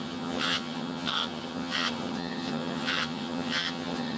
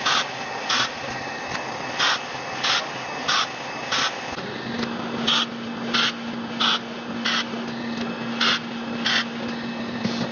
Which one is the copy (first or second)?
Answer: first